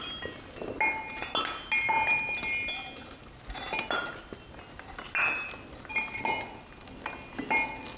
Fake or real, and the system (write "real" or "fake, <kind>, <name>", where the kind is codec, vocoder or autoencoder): real